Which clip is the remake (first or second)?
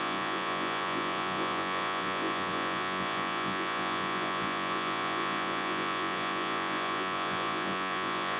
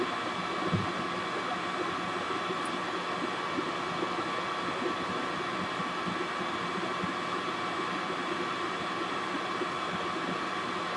first